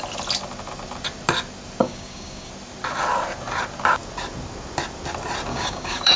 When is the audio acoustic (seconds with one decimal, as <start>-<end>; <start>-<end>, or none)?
0.0-1.8; 2.5-5.5